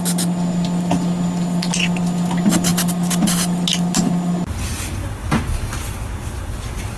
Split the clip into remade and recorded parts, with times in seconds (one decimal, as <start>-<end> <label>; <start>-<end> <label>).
0.0-7.0 recorded